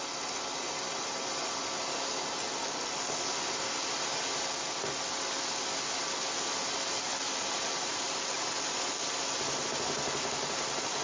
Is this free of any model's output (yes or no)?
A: yes